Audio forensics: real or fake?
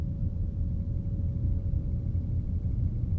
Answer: real